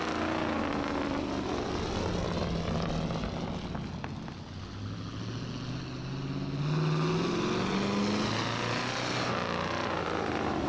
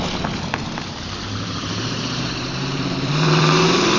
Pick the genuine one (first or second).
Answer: first